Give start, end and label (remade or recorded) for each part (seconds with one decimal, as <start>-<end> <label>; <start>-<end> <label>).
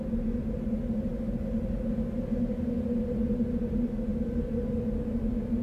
0.0-5.6 recorded